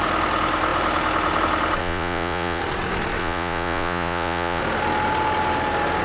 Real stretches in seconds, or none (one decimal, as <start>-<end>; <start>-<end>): 0.0-1.8; 2.6-3.2; 4.6-6.0